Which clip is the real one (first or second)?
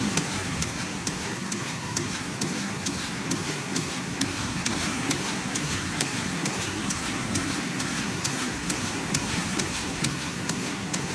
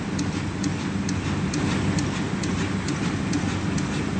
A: second